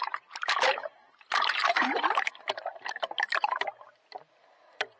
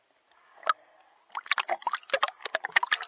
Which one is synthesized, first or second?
first